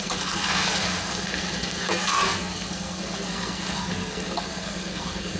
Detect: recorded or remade remade